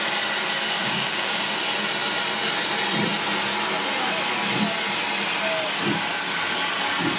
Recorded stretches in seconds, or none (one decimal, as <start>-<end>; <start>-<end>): 0.0-0.8; 1.5-7.2